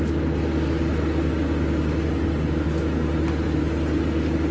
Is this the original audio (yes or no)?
yes